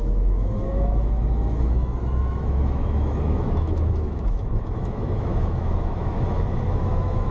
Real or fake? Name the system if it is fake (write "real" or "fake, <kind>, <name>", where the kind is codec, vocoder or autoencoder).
fake, autoencoder, DAC-VAE